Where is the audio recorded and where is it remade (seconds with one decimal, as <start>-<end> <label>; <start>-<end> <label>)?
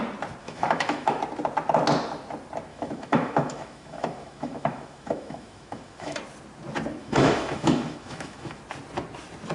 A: 0.0-0.4 recorded; 0.4-1.2 remade; 1.2-2.7 recorded; 2.7-6.2 remade; 6.2-7.0 recorded; 7.0-8.6 remade; 8.6-9.5 recorded